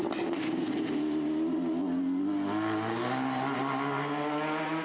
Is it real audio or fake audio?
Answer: real